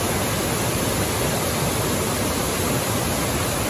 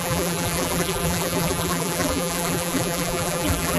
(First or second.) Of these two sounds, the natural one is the first